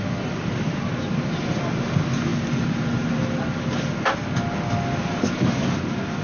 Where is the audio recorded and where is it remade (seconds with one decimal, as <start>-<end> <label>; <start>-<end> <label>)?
0.0-6.2 recorded